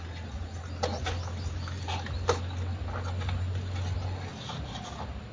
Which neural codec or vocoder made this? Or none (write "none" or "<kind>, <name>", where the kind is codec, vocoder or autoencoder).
none